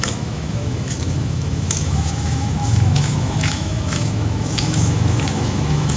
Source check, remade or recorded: remade